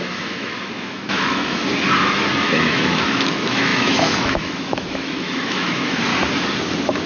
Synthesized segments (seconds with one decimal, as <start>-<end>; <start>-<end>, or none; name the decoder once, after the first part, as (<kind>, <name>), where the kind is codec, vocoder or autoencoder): 0.0-1.7 (autoencoder, DAC-VAE); 2.3-6.1